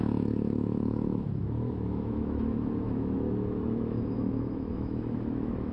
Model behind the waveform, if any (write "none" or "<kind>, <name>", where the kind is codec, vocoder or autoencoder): autoencoder, DAC-VAE